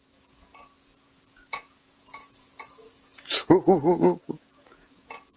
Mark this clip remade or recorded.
remade